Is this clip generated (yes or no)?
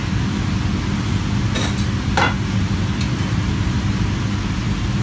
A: no